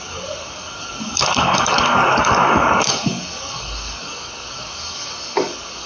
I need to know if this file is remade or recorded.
remade